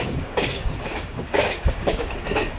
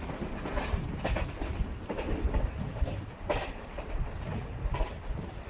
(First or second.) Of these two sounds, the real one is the second